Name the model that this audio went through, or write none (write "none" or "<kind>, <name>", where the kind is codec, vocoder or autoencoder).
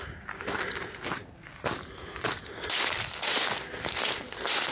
none